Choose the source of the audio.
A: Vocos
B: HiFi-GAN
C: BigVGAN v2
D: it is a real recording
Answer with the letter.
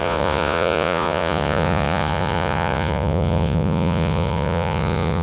A